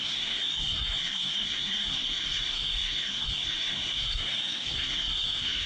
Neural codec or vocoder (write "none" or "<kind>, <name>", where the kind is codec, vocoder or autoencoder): codec, SNAC